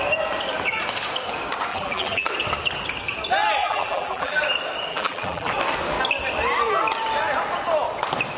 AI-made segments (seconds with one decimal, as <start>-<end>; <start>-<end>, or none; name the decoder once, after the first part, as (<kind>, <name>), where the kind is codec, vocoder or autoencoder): 1.7-2.3 (vocoder, BigVGAN v2); 3.6-4.4; 4.9-5.5